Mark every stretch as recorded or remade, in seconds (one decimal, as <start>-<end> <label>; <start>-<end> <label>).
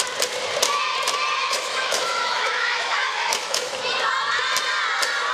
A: 0.0-1.4 recorded; 1.4-3.8 remade; 3.8-5.3 recorded